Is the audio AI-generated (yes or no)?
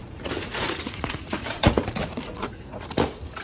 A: yes